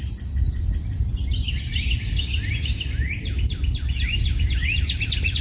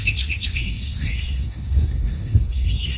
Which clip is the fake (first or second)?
second